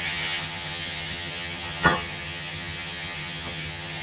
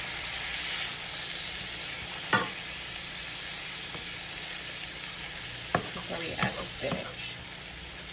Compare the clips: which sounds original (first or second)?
second